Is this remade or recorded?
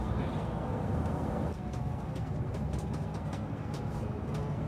remade